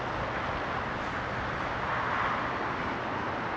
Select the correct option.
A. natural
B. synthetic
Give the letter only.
A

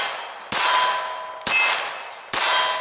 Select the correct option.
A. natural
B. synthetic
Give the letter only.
A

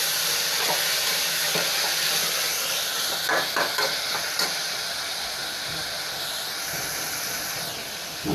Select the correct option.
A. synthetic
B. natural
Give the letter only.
A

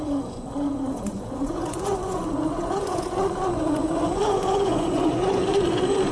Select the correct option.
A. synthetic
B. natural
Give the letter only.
A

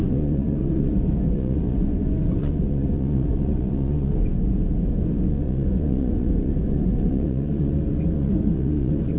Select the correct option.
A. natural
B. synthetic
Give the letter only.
B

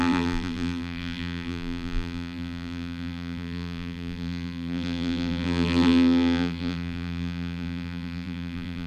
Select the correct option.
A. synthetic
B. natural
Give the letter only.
A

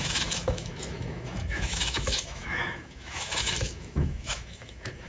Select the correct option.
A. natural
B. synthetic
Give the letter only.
B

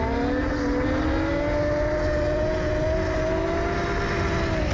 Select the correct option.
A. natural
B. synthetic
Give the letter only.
A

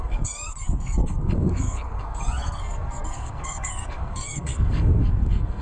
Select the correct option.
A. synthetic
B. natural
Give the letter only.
A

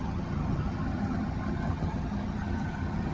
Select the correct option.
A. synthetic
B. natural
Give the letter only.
A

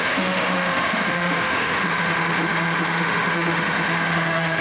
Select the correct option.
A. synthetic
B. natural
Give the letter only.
A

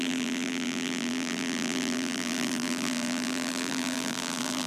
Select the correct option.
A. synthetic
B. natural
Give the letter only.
A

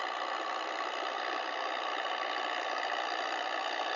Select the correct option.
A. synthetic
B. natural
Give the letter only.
B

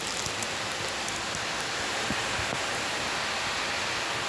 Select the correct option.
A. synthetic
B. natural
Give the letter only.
B